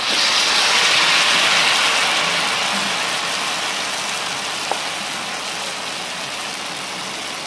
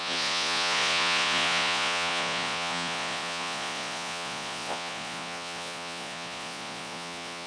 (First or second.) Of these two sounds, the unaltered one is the first